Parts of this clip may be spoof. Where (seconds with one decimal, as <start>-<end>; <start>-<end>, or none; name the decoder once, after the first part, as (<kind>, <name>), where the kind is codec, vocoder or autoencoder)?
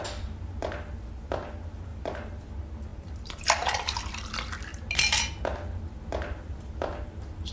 2.9-4.0 (vocoder, BigVGAN v2)